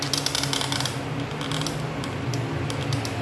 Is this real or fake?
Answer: real